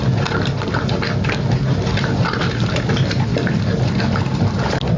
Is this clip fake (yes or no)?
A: no